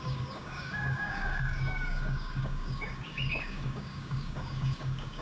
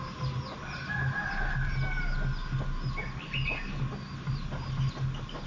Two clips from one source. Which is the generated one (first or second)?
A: first